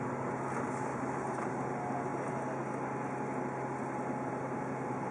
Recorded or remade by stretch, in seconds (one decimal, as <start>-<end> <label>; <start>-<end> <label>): 0.0-0.9 recorded; 0.9-1.5 remade; 1.5-5.1 recorded